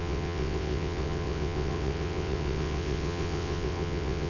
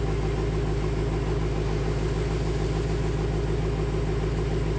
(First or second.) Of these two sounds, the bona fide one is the second